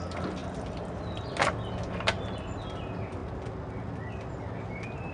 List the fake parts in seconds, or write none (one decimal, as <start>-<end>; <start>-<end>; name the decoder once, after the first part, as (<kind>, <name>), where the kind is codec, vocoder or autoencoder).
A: none